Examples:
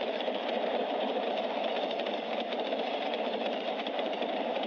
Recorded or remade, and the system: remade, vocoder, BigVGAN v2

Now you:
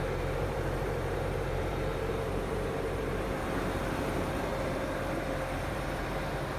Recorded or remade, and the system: remade, vocoder, BigVGAN v2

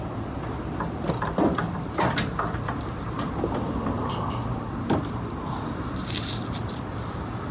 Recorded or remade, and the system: remade, vocoder, BigVGAN v2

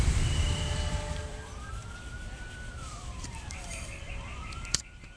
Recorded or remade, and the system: remade, vocoder, BigVGAN v2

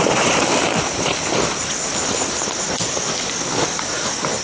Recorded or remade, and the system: recorded